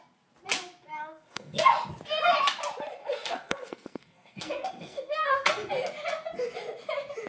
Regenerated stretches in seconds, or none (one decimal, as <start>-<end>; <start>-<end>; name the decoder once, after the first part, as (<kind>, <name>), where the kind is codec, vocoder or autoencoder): 0.9-1.7 (codec, SNAC); 3.0-5.7